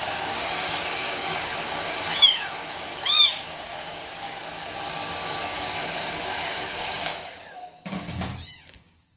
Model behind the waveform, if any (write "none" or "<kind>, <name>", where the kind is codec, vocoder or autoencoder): codec, DAC